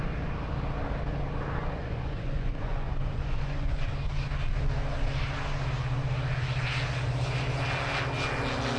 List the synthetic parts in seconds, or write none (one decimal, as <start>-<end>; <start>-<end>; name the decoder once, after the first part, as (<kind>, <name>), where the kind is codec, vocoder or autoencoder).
1.6-3.9 (vocoder, Vocos)